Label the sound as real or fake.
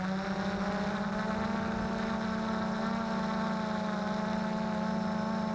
real